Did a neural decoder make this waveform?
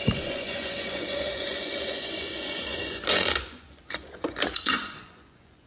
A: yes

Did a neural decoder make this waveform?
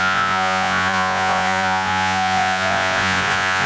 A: yes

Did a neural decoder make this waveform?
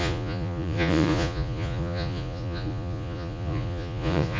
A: yes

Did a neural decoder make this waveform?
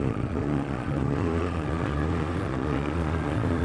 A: yes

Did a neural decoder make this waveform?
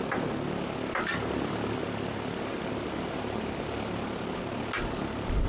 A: no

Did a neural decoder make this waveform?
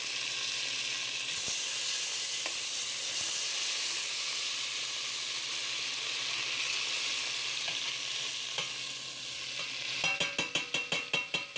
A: no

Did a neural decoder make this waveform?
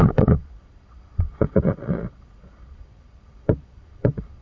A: yes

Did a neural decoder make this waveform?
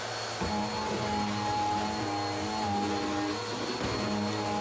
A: no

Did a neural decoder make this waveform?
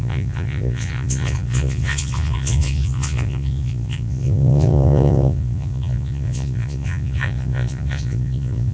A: yes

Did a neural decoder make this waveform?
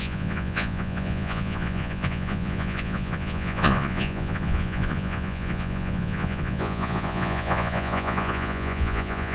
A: yes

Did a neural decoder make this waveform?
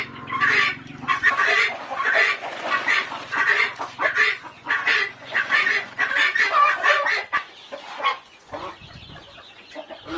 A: yes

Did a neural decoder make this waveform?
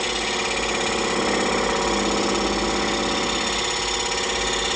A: no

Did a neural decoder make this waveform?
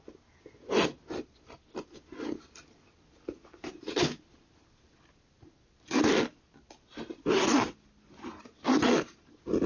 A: no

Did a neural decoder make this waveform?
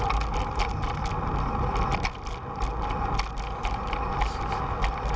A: no